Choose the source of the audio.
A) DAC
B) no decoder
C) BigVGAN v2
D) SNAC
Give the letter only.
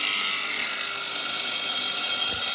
B